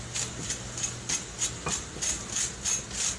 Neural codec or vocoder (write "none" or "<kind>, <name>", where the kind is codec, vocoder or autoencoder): none